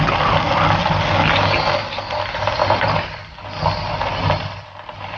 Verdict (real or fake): real